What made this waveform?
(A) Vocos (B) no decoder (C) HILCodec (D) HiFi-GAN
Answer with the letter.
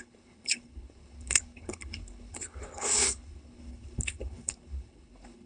C